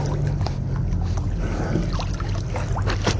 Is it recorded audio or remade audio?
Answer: recorded